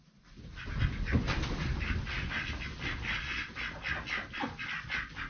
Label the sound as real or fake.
real